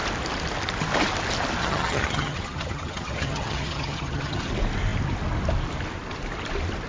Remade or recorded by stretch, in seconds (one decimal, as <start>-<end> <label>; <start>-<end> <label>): 0.0-1.6 recorded; 1.6-4.5 remade; 4.5-6.9 recorded